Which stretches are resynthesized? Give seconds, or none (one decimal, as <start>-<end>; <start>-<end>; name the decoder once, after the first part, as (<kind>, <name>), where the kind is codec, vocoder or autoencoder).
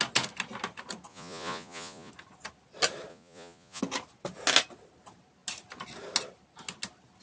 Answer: 1.1-2.1 (vocoder, Vocos); 3.1-3.8